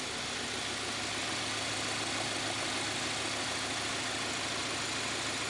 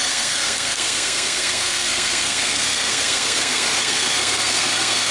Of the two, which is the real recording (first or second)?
first